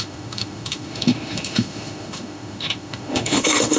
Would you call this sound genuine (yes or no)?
no